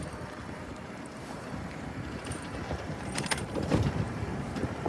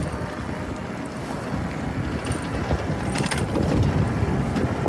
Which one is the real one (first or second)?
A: second